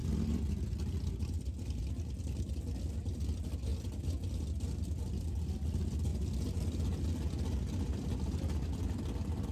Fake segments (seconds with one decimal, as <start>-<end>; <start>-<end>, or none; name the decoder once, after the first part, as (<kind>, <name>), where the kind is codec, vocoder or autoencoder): none